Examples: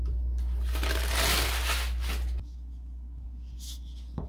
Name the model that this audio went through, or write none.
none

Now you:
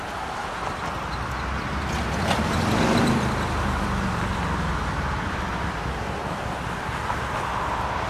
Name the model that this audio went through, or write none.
none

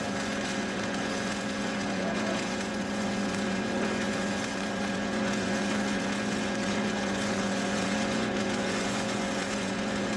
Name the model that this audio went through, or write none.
vocoder, Vocos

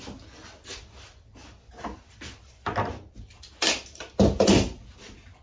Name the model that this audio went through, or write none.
none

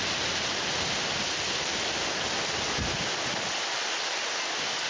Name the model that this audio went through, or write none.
none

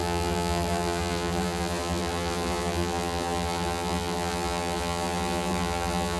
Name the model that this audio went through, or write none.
vocoder, BigVGAN v2